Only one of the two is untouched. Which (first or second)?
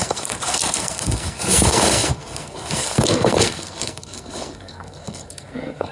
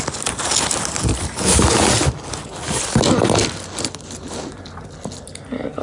second